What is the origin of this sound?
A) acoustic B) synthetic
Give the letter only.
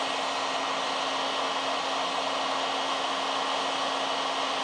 A